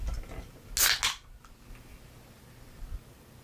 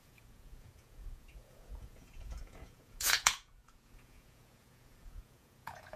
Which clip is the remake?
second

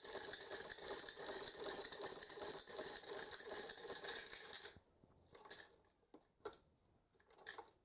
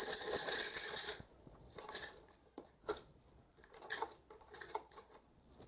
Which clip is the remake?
second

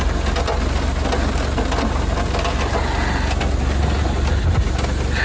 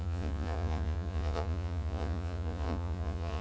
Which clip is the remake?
second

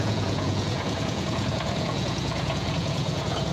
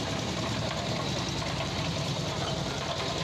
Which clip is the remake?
first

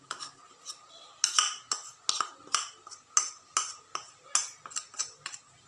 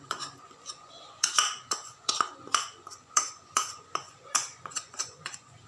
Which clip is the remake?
second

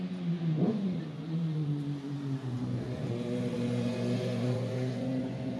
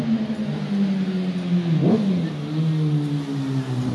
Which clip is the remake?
first